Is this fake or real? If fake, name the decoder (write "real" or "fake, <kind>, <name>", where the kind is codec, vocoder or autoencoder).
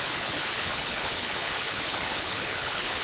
fake, codec, HILCodec